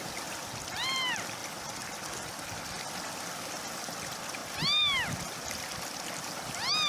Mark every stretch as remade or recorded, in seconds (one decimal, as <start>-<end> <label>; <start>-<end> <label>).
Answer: 0.0-6.9 recorded